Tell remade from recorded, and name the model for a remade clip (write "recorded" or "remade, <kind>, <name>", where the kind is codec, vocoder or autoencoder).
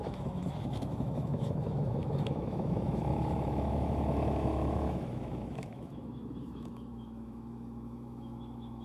remade, autoencoder, DAC-VAE